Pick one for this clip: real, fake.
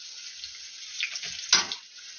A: real